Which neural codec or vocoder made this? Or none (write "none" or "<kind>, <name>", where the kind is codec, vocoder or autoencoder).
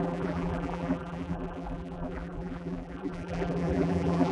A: vocoder, BigVGAN v2